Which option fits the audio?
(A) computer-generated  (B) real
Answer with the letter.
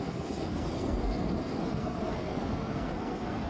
A